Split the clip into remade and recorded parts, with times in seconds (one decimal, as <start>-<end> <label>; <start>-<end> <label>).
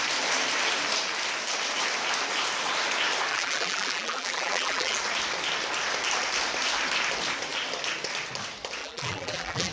0.0-3.3 recorded; 3.3-5.0 remade; 5.0-8.8 recorded; 8.8-9.7 remade